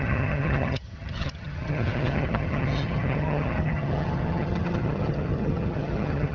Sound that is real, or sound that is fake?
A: fake